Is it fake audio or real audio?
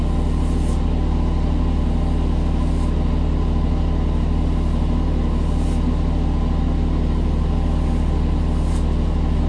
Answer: real